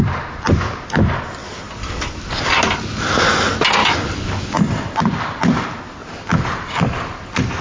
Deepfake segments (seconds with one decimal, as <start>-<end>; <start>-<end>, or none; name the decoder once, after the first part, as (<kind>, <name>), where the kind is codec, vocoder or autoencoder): 1.4-2.1 (vocoder, BigVGAN v2); 3.8-5.4